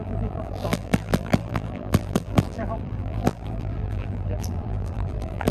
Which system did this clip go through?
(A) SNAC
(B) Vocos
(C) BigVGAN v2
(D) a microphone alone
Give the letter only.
C